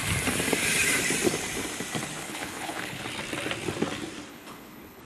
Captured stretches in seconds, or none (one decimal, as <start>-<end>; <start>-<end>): 0.0-2.2; 3.0-4.3